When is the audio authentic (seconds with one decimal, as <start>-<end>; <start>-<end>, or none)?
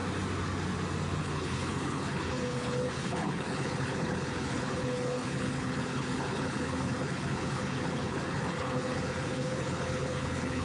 0.0-1.2